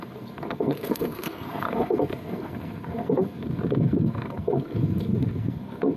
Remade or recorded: remade